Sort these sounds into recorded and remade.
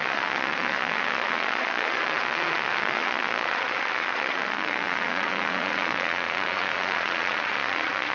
remade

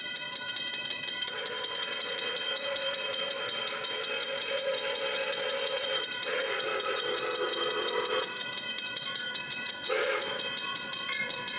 remade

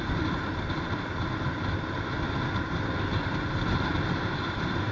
recorded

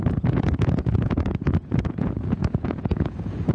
remade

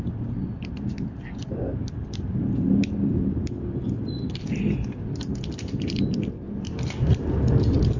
recorded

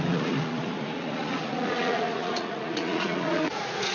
remade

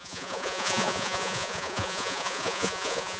remade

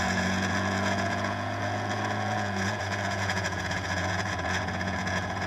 remade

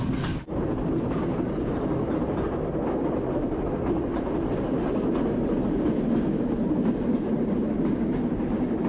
recorded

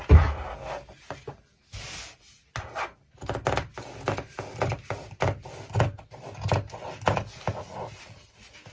recorded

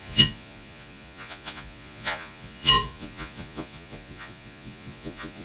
remade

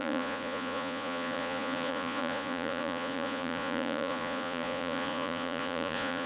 remade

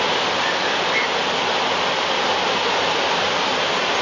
recorded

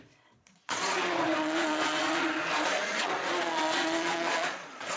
remade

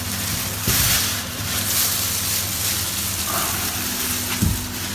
recorded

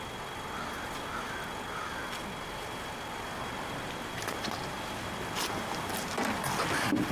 recorded